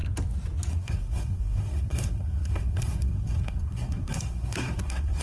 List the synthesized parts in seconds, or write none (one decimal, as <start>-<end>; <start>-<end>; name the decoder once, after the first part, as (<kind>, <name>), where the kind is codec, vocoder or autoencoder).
0.7-5.2 (codec, SNAC)